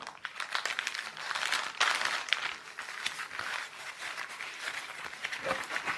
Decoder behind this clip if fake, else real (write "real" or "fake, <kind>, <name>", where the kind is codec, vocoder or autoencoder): real